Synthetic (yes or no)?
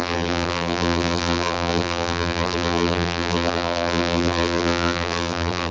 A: yes